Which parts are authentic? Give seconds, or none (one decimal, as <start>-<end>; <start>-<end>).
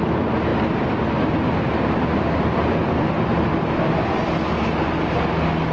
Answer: 0.0-0.5; 1.4-2.5; 4.3-5.7